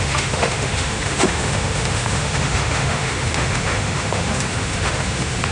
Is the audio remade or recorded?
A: remade